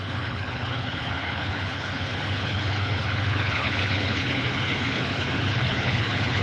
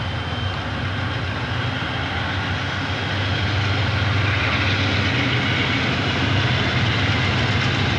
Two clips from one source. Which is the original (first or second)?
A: second